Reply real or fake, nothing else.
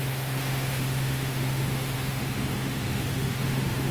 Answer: fake